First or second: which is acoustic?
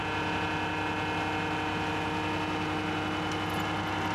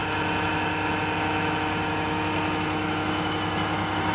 first